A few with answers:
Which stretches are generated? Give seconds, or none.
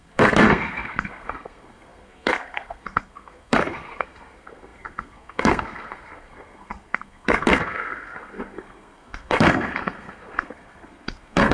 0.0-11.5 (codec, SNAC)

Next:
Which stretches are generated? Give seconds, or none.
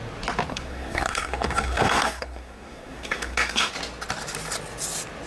0.5-3.7 (codec, SNAC)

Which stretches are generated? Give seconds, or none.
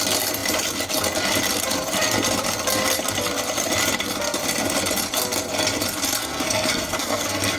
6.2-7.6 (codec, SNAC)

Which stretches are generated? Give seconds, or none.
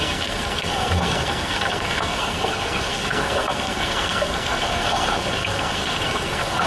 0.0-6.7 (codec, SNAC)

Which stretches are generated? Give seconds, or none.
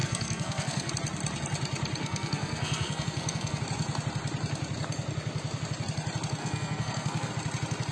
0.0-0.9 (codec, SNAC); 2.0-3.6; 6.4-7.3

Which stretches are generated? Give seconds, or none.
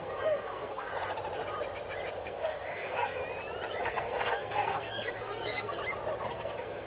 0.0-0.9 (codec, SNAC); 2.2-3.2; 3.8-5.8; 6.3-6.9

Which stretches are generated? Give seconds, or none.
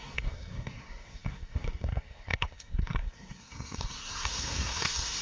0.0-5.2 (codec, SNAC)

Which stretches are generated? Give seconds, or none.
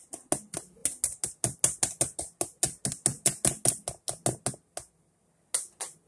none